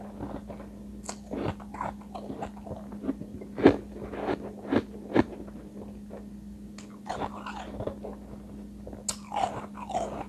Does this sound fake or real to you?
real